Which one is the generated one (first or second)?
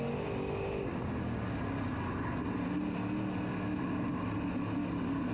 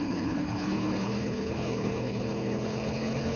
second